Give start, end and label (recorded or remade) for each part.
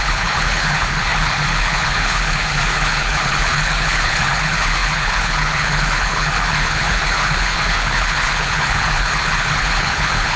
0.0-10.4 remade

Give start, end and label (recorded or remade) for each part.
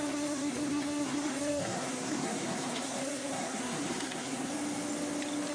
0.0-4.5 remade; 4.5-5.5 recorded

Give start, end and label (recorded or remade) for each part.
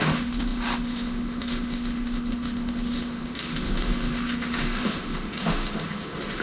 0.0-6.4 remade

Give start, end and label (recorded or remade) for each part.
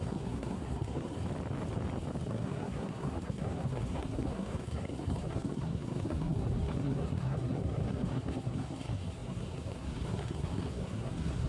0.0-1.2 remade; 1.2-2.3 recorded; 2.3-11.5 remade